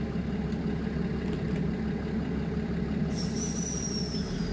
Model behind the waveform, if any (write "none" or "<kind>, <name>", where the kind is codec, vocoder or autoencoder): none